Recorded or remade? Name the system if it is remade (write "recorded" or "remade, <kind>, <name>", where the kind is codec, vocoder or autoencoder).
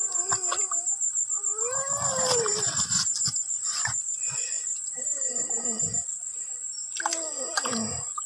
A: recorded